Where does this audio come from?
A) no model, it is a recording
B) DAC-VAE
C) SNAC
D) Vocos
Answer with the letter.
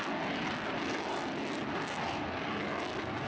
A